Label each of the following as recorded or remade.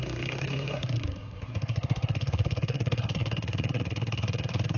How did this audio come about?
remade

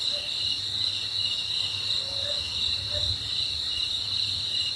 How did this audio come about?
recorded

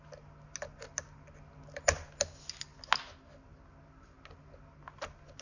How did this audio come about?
recorded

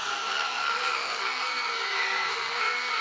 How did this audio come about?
remade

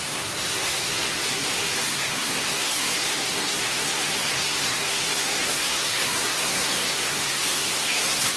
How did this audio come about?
remade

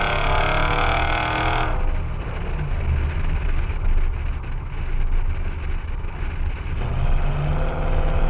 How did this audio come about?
recorded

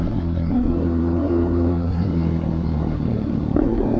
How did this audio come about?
remade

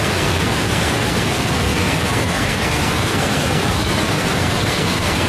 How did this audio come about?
remade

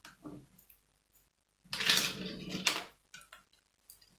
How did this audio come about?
recorded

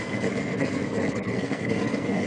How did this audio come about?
remade